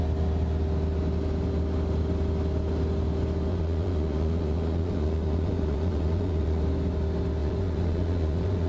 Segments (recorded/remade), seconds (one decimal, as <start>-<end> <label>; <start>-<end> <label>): 0.0-3.5 recorded; 3.5-6.6 remade; 6.6-7.4 recorded; 7.4-8.7 remade

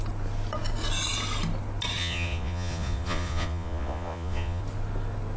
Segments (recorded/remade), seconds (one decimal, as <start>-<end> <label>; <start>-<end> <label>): 0.0-2.0 recorded; 2.0-4.6 remade; 4.6-5.4 recorded